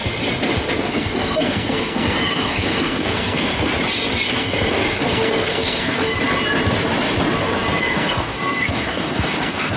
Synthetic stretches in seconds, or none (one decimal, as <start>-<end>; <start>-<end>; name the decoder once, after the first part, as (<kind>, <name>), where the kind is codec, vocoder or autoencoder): 0.9-3.7 (codec, SNAC); 4.3-6.0; 7.8-9.8